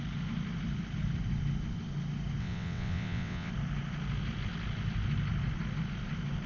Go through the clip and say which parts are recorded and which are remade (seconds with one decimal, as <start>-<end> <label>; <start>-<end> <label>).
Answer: 0.0-2.4 recorded; 2.4-3.5 remade; 3.5-6.5 recorded